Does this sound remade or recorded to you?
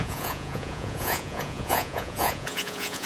remade